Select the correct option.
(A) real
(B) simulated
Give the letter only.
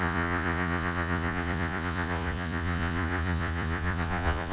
B